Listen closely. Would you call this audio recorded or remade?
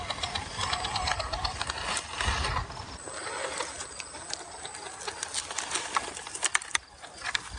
recorded